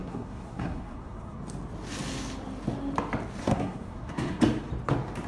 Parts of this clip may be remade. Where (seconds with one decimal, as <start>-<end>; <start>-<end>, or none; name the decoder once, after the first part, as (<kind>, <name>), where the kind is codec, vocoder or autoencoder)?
0.0-1.4 (codec, SNAC); 3.4-4.4